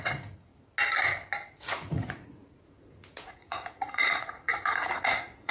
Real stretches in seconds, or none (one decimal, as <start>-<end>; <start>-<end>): 0.5-1.7